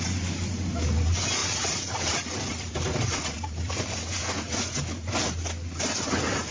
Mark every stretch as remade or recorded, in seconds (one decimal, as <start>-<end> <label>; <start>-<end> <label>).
0.0-1.4 recorded; 1.4-4.2 remade; 4.2-6.5 recorded